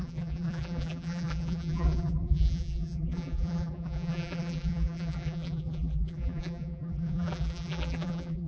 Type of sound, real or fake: fake